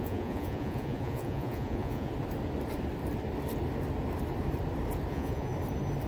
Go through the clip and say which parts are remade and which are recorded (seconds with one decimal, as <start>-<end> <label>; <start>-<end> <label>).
0.0-2.1 remade; 2.1-5.1 recorded; 5.1-5.5 remade; 5.5-6.1 recorded